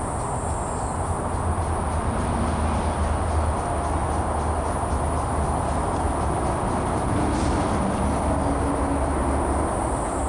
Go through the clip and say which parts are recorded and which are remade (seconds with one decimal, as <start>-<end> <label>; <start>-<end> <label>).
0.0-10.3 recorded